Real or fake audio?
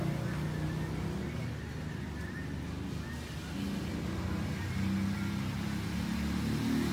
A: real